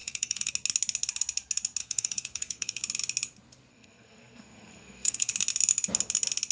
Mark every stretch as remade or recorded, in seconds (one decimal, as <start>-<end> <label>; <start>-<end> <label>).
0.0-0.5 remade; 0.5-1.8 recorded; 1.8-2.8 remade; 2.8-3.7 recorded; 3.7-5.3 remade; 5.3-6.5 recorded